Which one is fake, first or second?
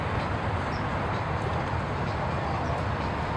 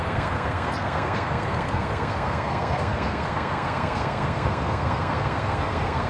second